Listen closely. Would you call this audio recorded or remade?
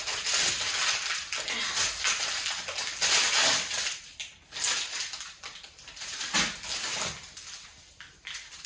recorded